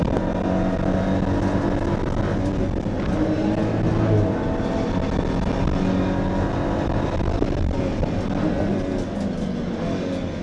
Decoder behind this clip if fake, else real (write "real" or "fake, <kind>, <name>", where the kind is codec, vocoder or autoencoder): real